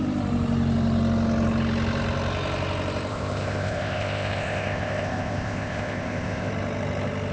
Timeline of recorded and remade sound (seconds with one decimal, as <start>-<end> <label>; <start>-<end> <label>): 0.0-3.1 recorded; 3.1-6.5 remade; 6.5-7.3 recorded